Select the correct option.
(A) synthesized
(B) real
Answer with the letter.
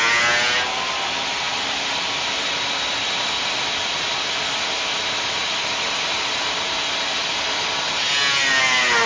B